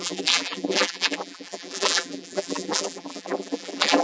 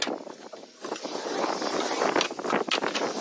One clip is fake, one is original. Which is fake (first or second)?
first